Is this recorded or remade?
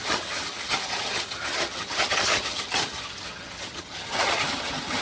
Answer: remade